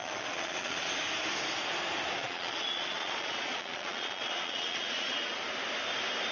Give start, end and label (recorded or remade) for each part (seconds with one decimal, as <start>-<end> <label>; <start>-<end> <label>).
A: 0.0-0.9 remade; 0.9-2.2 recorded; 2.2-5.4 remade; 5.4-6.3 recorded